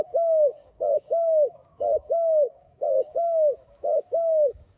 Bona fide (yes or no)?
no